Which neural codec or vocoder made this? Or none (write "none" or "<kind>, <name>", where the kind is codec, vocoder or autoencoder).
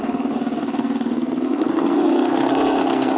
codec, SNAC